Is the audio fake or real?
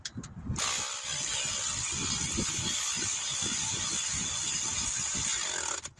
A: real